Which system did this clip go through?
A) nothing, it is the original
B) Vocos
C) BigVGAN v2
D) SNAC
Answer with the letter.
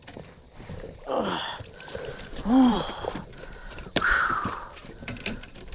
C